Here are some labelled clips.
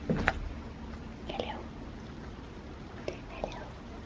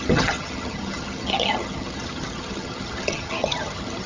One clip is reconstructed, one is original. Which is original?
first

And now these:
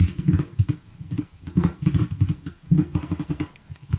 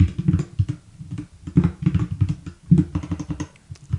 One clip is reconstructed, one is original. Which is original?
second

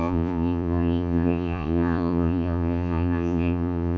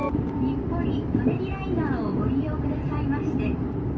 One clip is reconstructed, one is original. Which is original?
second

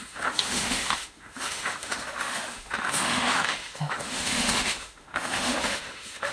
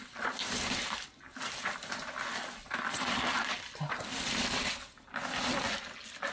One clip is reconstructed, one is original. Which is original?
second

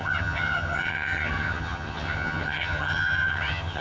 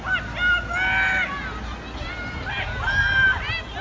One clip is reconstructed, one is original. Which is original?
second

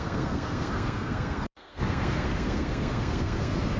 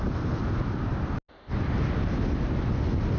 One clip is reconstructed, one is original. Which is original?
second